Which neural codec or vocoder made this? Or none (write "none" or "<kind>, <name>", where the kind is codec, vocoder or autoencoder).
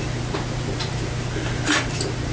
none